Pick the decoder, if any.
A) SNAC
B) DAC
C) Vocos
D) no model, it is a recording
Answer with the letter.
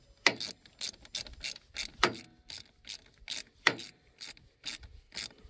D